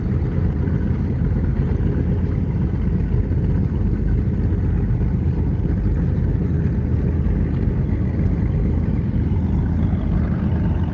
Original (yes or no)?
yes